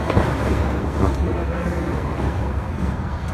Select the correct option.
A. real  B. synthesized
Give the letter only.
B